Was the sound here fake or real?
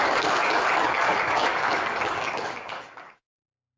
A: fake